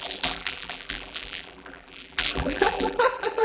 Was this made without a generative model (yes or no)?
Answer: no